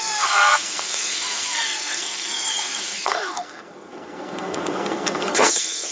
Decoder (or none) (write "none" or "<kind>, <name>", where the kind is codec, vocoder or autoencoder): codec, SNAC